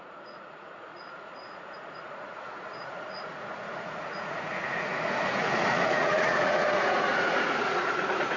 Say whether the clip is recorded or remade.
remade